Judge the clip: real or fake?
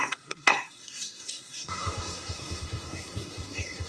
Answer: fake